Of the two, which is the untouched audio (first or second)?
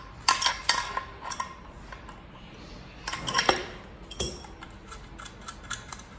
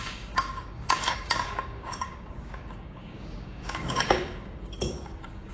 first